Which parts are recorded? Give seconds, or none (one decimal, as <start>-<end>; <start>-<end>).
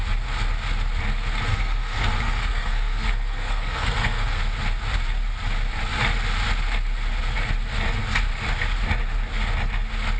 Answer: 0.0-1.5; 4.4-10.2